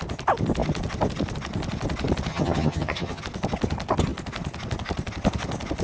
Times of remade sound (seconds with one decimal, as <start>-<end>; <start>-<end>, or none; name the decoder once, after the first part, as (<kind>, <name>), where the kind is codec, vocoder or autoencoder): 2.3-3.2 (vocoder, HiFi-GAN)